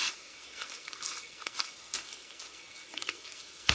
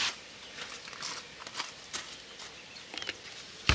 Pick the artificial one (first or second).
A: first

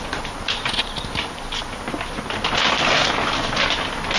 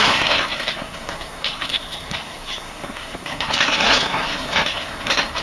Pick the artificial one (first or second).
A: second